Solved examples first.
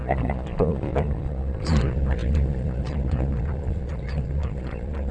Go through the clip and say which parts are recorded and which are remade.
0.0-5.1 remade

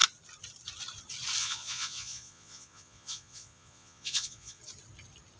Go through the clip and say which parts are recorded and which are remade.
0.0-1.4 recorded; 1.4-4.6 remade; 4.6-5.4 recorded

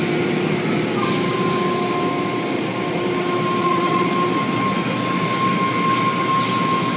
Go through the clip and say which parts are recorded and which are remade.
0.0-3.6 recorded; 3.6-4.1 remade; 4.1-7.0 recorded

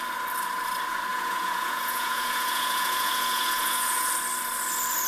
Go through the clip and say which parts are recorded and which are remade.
0.0-1.1 recorded; 1.1-4.1 remade; 4.1-5.1 recorded

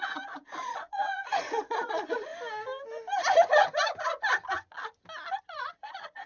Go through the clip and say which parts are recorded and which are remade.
0.0-2.3 remade; 2.3-5.4 recorded; 5.4-6.3 remade

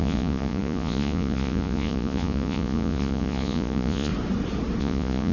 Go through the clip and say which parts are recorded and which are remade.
0.0-4.1 remade; 4.1-4.8 recorded; 4.8-5.3 remade